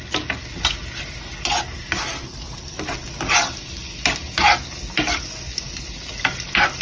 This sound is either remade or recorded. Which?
recorded